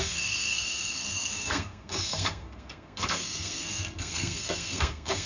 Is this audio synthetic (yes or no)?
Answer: yes